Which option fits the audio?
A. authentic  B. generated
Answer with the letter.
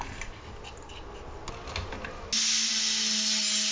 A